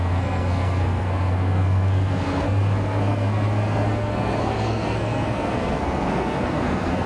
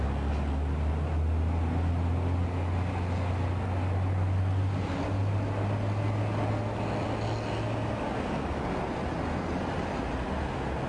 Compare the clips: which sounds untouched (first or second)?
second